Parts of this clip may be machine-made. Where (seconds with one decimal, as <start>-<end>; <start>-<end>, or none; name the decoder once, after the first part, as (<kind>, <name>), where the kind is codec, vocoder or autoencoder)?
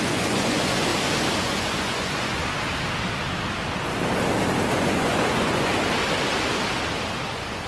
0.0-0.9 (vocoder, Vocos); 1.4-2.4; 4.7-5.7; 7.3-7.7